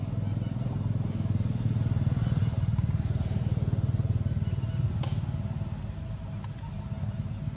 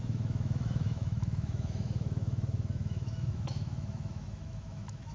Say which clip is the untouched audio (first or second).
first